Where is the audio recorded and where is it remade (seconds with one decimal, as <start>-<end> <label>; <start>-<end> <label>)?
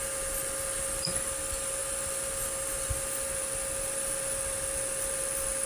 0.0-5.7 recorded